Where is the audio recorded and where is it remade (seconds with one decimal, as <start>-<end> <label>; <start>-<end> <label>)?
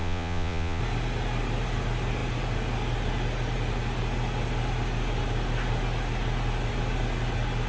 0.0-0.8 remade; 0.8-7.7 recorded